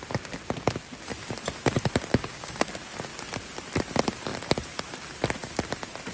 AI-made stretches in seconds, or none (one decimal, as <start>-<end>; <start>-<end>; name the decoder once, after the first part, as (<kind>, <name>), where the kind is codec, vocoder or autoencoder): 2.1-2.7 (codec, DAC)